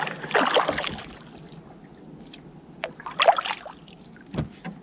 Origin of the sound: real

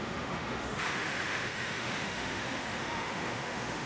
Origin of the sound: fake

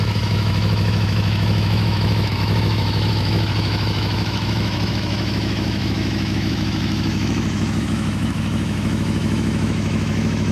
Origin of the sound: fake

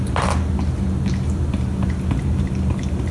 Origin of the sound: real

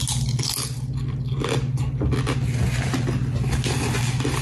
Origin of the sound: real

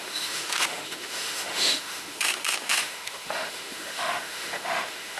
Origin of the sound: fake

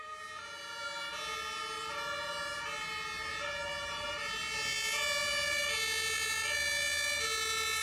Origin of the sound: real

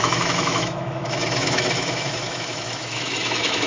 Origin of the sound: fake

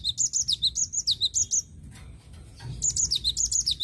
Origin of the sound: real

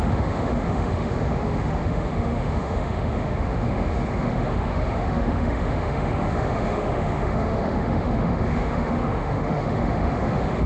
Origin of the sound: fake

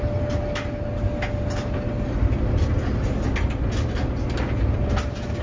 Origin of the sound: real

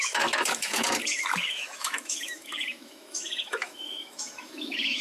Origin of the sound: fake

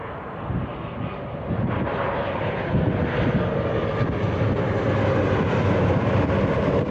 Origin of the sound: real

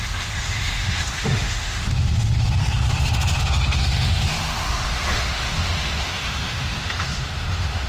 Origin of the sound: fake